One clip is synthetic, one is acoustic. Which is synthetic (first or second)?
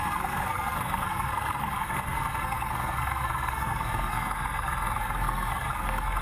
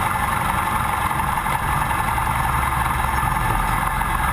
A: first